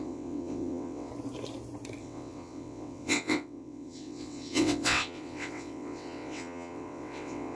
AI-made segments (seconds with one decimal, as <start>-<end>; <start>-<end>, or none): 0.0-1.1; 2.0-7.6

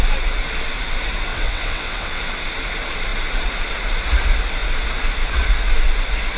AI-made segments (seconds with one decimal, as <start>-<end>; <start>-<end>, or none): 1.3-2.2